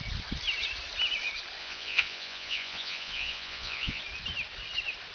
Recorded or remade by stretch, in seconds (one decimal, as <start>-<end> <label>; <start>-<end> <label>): 0.0-1.6 recorded; 1.6-4.0 remade; 4.0-5.1 recorded